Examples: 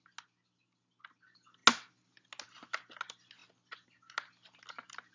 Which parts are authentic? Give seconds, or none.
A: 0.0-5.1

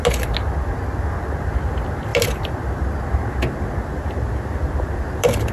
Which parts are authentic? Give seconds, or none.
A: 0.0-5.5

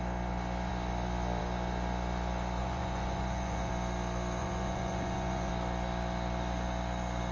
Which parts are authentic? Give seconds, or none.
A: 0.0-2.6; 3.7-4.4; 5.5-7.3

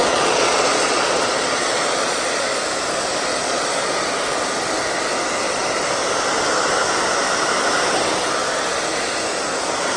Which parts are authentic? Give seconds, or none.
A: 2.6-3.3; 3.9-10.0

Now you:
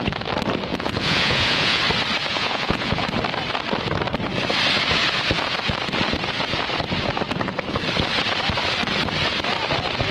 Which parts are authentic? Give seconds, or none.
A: 0.0-0.7; 1.8-2.3; 3.0-10.1